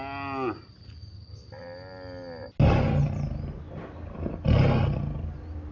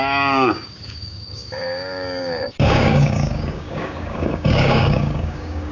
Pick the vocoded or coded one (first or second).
second